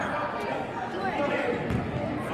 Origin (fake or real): real